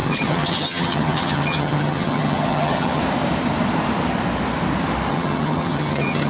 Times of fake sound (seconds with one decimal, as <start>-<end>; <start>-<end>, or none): 0.0-3.0; 5.1-6.3